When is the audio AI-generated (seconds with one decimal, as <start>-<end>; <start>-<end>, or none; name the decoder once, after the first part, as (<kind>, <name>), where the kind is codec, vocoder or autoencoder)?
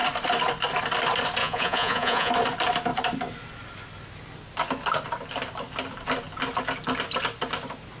1.4-2.3 (vocoder, Vocos)